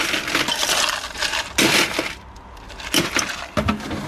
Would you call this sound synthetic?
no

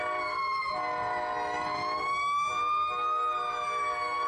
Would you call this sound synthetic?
no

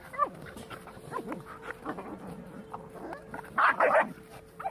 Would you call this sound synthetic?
no